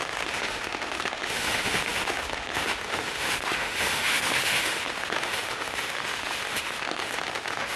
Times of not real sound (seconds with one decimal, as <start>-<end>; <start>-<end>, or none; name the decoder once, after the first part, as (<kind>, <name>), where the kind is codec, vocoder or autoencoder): 0.0-7.8 (autoencoder, DAC-VAE)